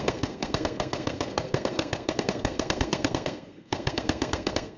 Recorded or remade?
remade